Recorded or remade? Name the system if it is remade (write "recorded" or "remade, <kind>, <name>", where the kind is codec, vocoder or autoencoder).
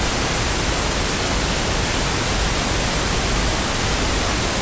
recorded